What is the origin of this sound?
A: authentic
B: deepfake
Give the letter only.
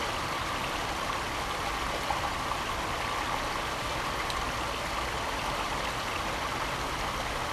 A